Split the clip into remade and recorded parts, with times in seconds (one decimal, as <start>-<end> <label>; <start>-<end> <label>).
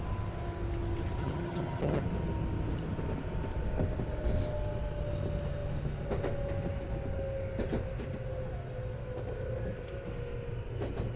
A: 0.0-1.2 recorded; 1.2-2.0 remade; 2.0-11.2 recorded